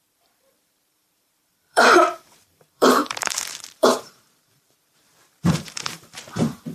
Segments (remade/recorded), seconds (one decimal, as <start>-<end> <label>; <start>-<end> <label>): 0.0-6.7 remade